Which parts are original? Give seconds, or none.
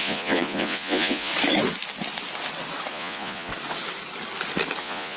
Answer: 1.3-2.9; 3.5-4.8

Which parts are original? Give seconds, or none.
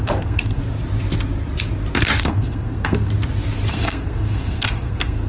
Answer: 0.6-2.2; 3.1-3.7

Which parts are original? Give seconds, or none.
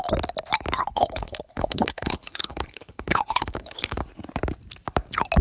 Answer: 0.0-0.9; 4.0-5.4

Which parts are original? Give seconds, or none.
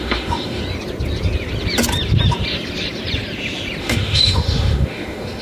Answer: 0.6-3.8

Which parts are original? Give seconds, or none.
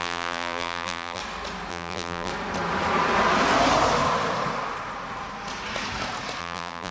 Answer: 1.2-1.7; 2.3-6.4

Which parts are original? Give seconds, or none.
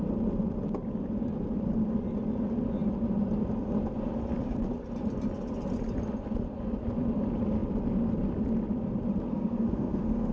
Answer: 0.0-9.3